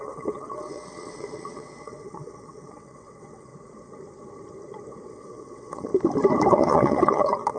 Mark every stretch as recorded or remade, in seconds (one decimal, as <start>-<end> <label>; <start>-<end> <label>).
0.0-3.5 remade; 3.5-5.1 recorded; 5.1-5.9 remade; 5.9-6.5 recorded; 6.5-7.6 remade